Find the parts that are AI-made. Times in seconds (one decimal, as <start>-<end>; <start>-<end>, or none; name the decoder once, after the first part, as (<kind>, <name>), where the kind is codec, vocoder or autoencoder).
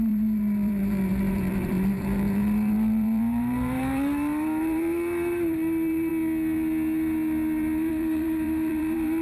0.0-6.1 (vocoder, BigVGAN v2); 7.9-9.2